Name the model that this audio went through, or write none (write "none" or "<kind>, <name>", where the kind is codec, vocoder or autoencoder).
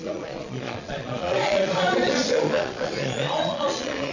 vocoder, Vocos